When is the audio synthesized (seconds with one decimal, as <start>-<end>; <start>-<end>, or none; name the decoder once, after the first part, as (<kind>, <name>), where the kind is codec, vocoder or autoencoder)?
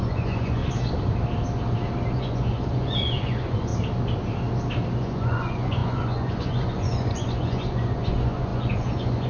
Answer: 0.0-0.6 (vocoder, Vocos); 2.1-3.7; 5.0-9.3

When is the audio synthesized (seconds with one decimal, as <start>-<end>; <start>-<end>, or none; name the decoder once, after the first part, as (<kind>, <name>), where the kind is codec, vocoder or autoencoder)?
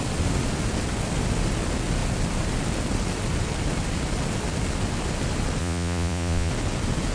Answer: 5.6-6.5 (vocoder, Vocos)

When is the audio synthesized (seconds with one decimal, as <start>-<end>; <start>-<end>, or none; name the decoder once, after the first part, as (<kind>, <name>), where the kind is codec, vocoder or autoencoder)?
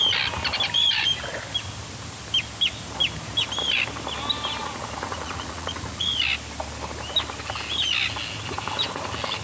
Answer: 4.6-6.1 (vocoder, Vocos)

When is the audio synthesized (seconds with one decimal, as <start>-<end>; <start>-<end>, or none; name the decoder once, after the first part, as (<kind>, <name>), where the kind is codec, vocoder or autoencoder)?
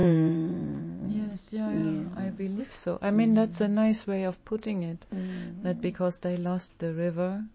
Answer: 0.0-0.8 (vocoder, Vocos); 4.4-5.0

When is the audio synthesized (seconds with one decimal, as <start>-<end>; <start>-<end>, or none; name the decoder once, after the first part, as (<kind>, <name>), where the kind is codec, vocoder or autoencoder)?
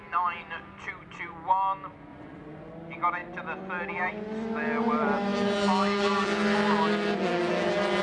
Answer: 2.1-2.7 (vocoder, Vocos)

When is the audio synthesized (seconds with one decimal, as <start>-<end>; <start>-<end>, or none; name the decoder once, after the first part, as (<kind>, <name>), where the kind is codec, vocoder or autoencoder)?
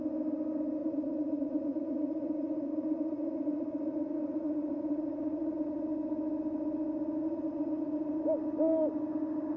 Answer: 0.8-5.8 (vocoder, Vocos); 7.2-8.2